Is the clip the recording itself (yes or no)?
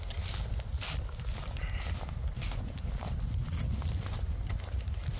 yes